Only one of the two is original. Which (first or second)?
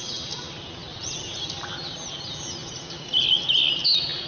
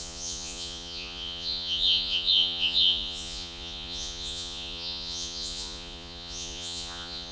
first